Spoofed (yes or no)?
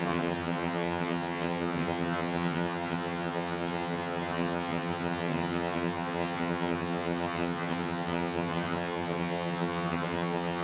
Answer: yes